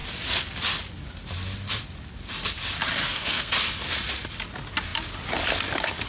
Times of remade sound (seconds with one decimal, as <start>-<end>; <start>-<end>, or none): 3.0-3.5